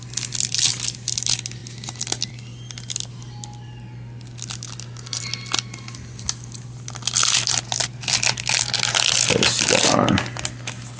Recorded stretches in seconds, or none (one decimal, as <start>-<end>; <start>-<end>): 0.0-11.0